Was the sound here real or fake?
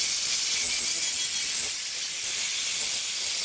real